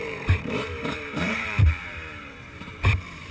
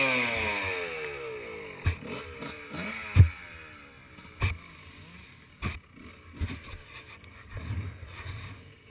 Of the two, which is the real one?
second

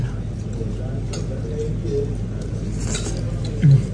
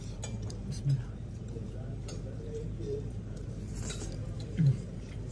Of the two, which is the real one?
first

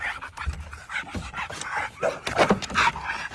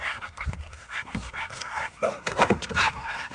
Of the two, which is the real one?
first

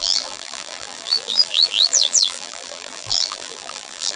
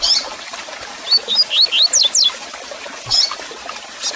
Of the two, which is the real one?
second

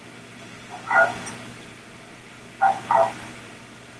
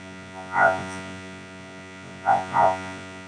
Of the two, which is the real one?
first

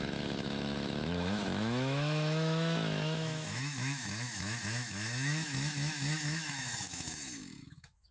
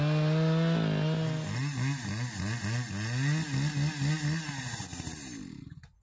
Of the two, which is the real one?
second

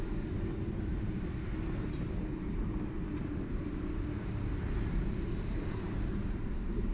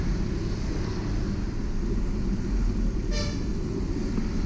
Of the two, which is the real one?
second